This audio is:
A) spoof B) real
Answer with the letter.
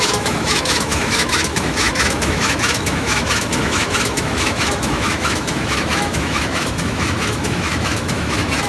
A